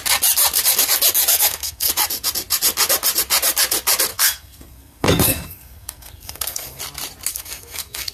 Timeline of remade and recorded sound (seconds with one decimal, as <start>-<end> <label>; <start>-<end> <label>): 0.0-1.3 recorded; 1.3-1.9 remade; 1.9-4.1 recorded; 4.1-6.8 remade; 6.8-7.3 recorded; 7.3-8.1 remade